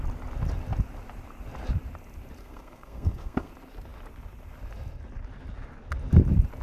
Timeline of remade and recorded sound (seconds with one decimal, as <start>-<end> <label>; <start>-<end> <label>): 0.0-2.4 recorded; 2.4-3.5 remade; 3.5-6.6 recorded

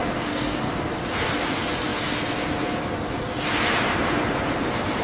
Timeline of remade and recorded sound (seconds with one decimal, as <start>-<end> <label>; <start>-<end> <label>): 0.0-0.7 remade; 0.7-5.0 recorded

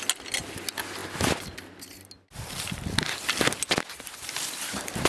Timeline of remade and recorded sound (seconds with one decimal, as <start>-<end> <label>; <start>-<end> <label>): 0.0-5.1 recorded

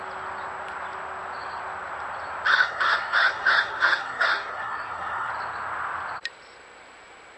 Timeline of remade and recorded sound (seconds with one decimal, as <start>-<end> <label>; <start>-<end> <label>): 0.0-2.5 recorded; 2.5-5.3 remade; 5.3-7.4 recorded

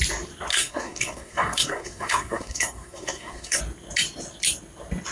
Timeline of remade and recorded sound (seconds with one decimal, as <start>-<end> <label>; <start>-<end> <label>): 0.0-0.5 recorded; 0.5-3.6 remade; 3.6-5.1 recorded